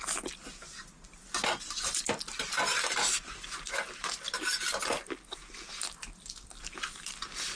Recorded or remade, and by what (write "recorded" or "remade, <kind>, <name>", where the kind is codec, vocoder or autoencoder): recorded